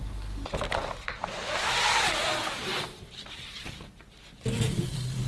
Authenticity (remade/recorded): recorded